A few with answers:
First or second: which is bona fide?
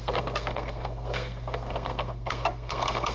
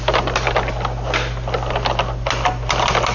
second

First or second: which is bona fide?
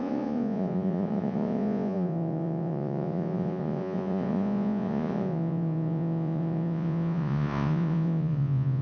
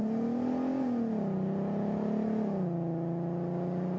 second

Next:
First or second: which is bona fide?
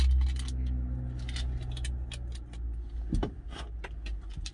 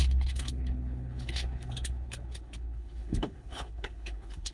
first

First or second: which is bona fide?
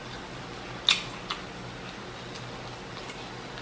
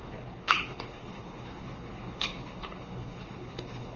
first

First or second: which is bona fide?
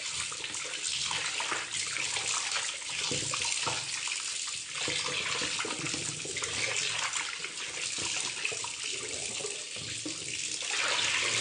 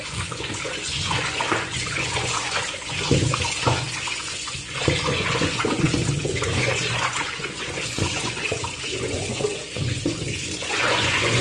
first